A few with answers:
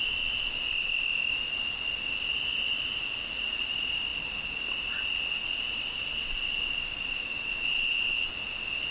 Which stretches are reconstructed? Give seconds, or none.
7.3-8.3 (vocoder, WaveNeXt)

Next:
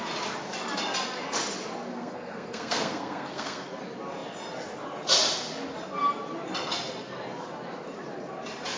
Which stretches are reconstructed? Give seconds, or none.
1.9-3.7 (codec, SNAC)